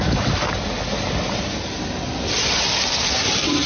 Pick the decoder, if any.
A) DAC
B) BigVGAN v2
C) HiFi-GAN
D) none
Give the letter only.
D